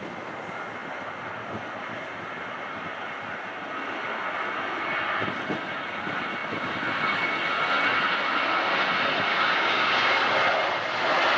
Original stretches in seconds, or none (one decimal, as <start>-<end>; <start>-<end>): 0.0-9.3; 10.1-11.4